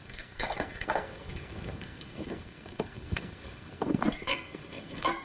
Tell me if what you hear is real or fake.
fake